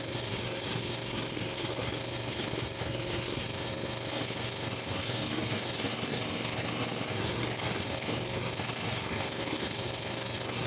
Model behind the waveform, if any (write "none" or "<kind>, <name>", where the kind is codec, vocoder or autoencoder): codec, SNAC